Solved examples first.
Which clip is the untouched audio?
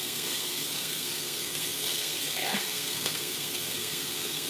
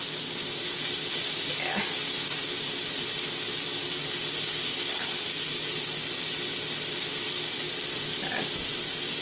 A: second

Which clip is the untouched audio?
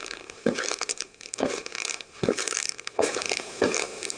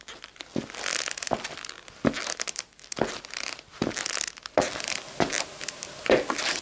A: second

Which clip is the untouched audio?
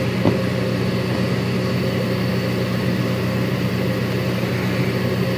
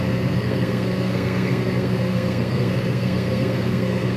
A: first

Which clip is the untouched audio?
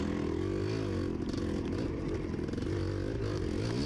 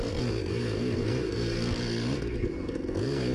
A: first